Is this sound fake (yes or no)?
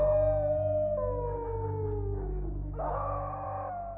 no